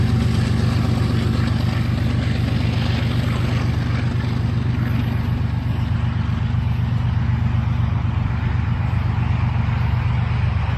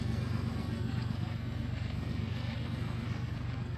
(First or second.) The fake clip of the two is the second